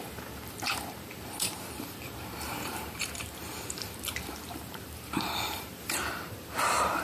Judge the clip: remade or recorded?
remade